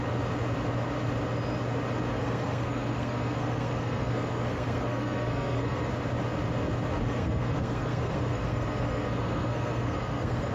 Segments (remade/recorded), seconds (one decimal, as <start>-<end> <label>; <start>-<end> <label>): 0.0-2.1 recorded; 2.1-5.9 remade; 5.9-7.0 recorded; 7.0-10.5 remade